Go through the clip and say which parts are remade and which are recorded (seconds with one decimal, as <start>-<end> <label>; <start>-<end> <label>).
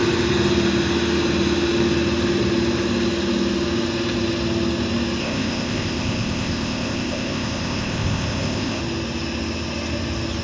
0.0-5.2 recorded; 5.2-8.8 remade; 8.8-10.4 recorded